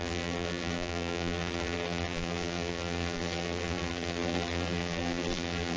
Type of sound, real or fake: fake